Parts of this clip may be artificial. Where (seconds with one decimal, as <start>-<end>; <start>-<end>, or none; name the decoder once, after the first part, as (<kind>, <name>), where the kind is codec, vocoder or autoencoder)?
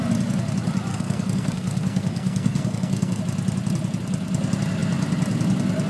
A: 0.9-3.2 (codec, SNAC)